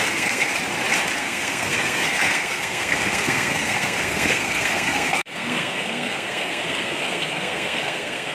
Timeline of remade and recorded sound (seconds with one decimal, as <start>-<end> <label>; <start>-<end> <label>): 0.0-0.5 remade; 0.5-1.2 recorded; 1.2-8.3 remade